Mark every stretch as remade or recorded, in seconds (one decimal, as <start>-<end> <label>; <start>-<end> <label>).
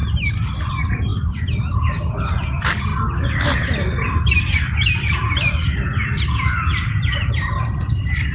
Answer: 0.0-8.3 recorded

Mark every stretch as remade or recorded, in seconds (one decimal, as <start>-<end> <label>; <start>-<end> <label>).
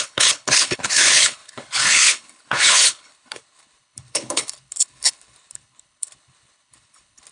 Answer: 0.0-7.3 remade